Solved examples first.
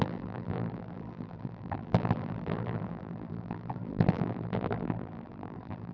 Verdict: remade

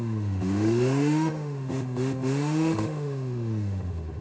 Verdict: remade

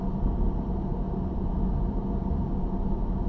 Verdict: recorded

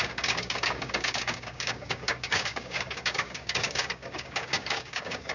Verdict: remade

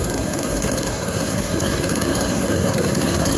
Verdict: remade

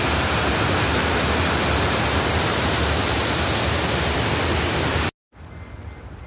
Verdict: recorded